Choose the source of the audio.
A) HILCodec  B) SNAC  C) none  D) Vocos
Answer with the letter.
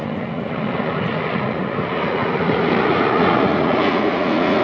D